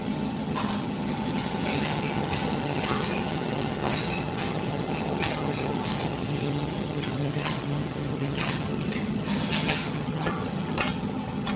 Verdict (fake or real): fake